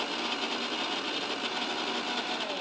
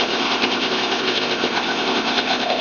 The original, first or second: first